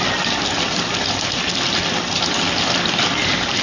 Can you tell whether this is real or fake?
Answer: real